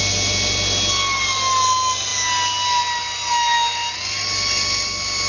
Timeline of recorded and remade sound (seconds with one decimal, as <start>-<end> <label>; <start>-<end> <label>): 0.0-5.3 recorded